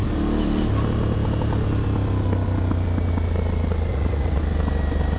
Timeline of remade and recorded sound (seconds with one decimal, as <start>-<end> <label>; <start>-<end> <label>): 0.0-3.9 recorded; 3.9-4.4 remade; 4.4-5.2 recorded